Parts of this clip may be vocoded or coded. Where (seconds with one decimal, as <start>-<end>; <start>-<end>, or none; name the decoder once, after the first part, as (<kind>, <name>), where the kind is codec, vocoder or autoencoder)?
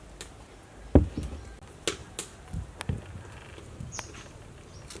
none